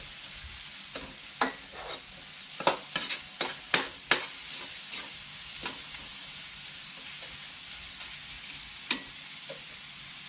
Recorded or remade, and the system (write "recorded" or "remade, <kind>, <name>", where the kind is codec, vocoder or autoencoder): recorded